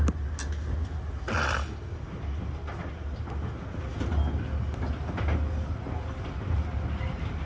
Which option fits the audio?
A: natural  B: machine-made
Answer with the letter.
A